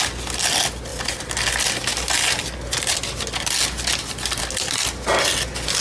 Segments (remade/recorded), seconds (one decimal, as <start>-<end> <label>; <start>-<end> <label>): 0.0-5.8 recorded